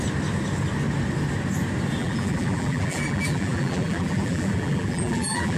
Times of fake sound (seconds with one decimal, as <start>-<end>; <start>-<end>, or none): 2.0-5.6